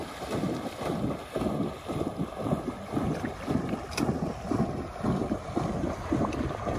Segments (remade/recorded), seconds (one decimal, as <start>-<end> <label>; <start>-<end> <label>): 0.0-6.8 recorded